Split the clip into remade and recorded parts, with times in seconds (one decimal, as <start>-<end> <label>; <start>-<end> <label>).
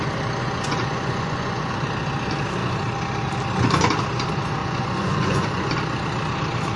0.0-0.4 recorded; 0.4-1.7 remade; 1.7-4.6 recorded; 4.6-5.7 remade; 5.7-6.8 recorded